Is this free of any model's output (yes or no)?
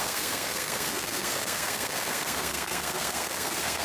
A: no